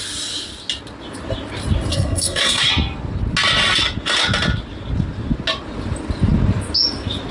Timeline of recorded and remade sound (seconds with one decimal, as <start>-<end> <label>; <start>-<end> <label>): 0.0-1.9 recorded; 1.9-2.7 remade; 2.7-7.3 recorded